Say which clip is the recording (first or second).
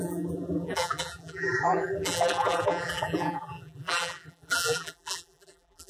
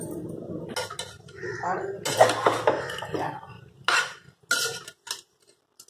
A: second